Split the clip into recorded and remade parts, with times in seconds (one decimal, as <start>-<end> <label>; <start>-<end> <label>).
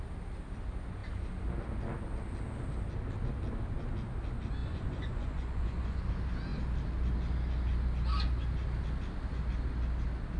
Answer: 0.0-4.6 recorded; 4.6-6.0 remade; 6.0-10.4 recorded